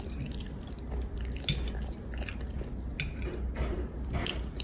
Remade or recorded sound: recorded